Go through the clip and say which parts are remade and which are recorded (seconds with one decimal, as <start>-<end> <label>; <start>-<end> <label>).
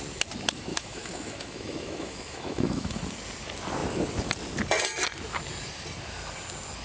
0.0-0.7 recorded; 0.7-3.0 remade; 3.0-6.8 recorded